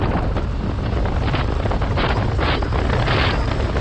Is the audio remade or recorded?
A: recorded